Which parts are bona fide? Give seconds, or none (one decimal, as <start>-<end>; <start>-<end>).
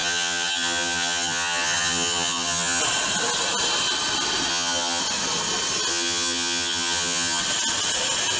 2.8-4.5; 5.0-5.9; 7.4-8.4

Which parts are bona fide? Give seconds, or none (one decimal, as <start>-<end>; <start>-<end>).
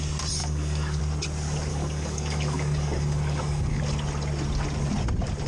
0.0-0.4; 1.0-1.7; 3.8-5.5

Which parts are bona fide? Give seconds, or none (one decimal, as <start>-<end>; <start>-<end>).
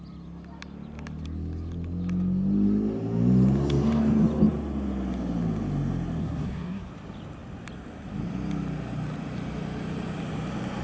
0.0-6.2; 6.9-10.8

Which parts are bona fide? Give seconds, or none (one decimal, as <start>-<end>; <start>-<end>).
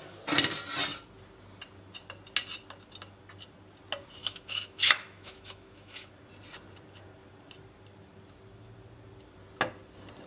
0.0-4.2; 6.1-10.3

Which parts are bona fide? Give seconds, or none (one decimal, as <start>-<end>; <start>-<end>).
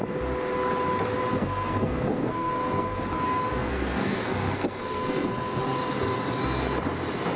0.0-1.3; 3.0-3.6; 5.6-7.4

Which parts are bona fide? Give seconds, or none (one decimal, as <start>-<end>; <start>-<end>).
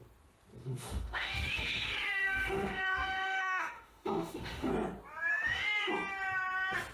0.0-0.6; 4.7-5.3; 5.9-6.9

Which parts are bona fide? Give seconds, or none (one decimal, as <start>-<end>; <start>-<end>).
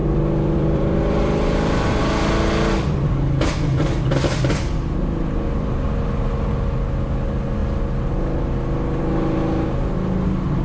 2.0-10.6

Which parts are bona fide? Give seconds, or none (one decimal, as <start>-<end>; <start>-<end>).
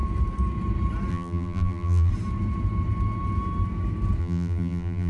0.0-1.1; 2.1-4.2